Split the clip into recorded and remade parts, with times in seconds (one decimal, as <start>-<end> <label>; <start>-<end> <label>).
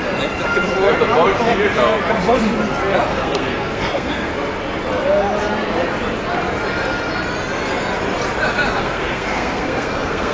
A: 0.0-3.1 recorded; 3.1-4.3 remade; 4.3-8.8 recorded; 8.8-10.3 remade